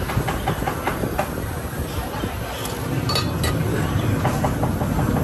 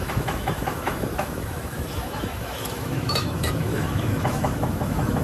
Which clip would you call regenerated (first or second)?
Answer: second